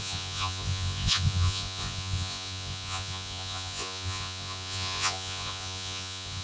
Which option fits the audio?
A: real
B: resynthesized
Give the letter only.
B